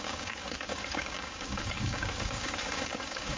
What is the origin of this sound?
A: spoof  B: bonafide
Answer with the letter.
A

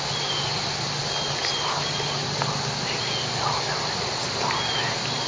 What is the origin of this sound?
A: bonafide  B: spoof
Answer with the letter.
A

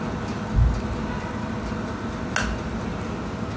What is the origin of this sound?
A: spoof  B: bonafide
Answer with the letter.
B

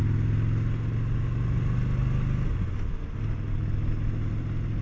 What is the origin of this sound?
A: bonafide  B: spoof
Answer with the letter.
A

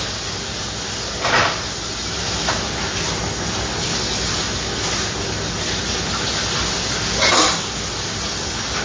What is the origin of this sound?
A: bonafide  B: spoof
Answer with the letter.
A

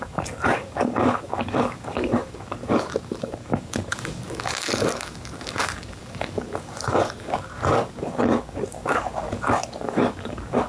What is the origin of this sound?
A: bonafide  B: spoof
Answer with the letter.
B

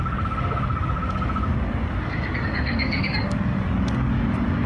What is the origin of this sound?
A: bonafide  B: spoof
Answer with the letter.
B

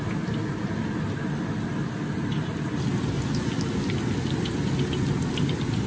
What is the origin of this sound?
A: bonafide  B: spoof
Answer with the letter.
A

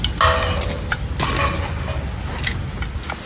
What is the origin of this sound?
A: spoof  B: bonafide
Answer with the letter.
B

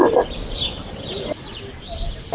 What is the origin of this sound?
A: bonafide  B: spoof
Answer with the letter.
A